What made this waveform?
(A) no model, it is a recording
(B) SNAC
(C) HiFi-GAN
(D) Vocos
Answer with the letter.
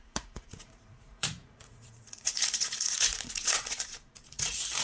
D